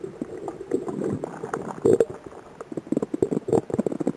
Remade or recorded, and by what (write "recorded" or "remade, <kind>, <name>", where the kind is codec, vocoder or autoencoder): recorded